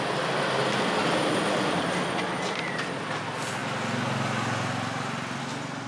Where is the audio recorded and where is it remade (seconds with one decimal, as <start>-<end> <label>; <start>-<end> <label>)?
0.0-1.0 recorded; 1.0-2.2 remade; 2.2-5.9 recorded